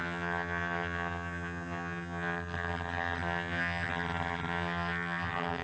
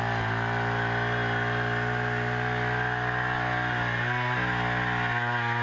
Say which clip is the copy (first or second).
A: first